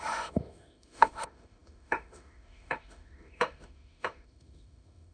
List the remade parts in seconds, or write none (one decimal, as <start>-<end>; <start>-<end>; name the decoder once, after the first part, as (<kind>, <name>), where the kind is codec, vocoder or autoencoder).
0.0-5.1 (autoencoder, DAC-VAE)